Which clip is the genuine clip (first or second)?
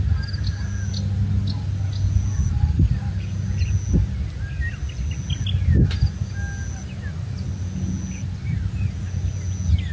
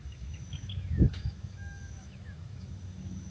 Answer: first